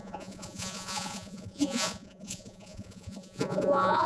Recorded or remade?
remade